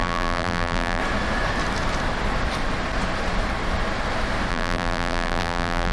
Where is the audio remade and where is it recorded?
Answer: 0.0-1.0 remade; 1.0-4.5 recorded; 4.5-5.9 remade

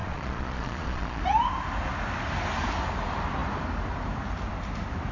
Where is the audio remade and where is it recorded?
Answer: 0.0-1.2 remade; 1.2-5.1 recorded

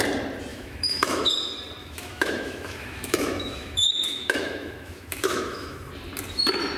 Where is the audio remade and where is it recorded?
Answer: 0.0-0.5 recorded; 0.5-1.3 remade; 1.3-1.8 recorded; 1.8-5.9 remade; 5.9-6.8 recorded